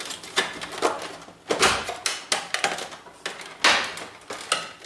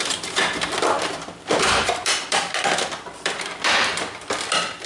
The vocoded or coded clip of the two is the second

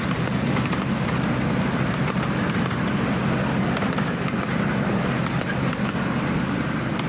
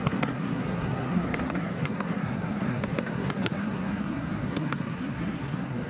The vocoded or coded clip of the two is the second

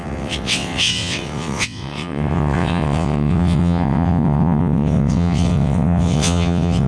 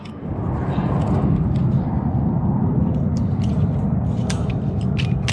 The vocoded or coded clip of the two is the first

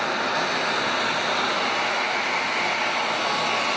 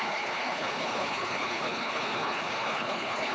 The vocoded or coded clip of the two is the second